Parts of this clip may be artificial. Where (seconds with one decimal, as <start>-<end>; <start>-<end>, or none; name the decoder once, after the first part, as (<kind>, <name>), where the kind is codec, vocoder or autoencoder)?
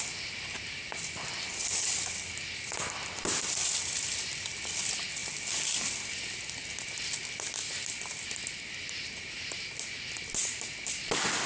none